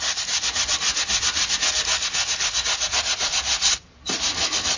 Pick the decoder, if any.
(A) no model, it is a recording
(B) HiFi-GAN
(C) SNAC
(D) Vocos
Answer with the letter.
A